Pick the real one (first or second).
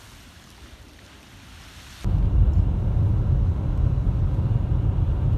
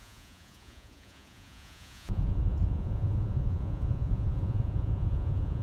first